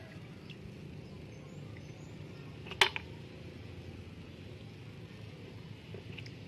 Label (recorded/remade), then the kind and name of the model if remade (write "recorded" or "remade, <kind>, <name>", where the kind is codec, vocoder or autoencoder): recorded